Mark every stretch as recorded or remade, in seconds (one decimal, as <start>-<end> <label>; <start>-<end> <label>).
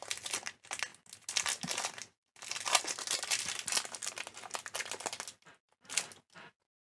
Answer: 0.0-6.9 recorded